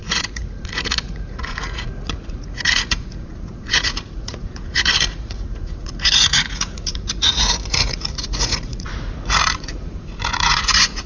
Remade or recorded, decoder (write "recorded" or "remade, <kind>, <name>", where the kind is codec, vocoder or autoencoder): remade, vocoder, Vocos